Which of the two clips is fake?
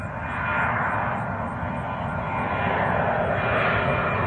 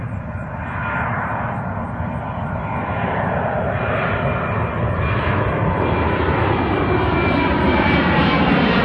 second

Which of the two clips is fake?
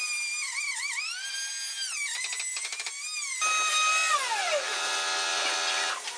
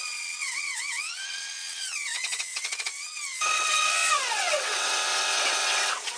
second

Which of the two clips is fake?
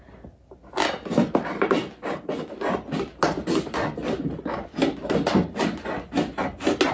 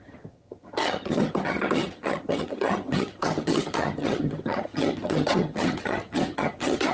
second